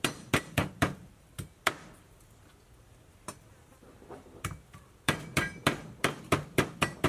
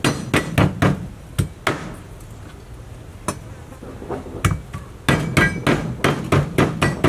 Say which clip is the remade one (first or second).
first